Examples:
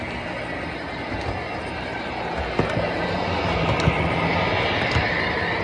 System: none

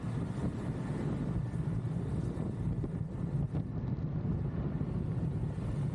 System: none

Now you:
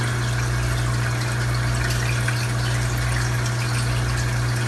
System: none